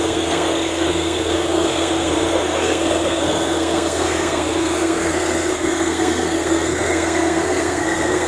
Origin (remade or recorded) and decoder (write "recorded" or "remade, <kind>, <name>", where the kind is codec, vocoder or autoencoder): remade, codec, SNAC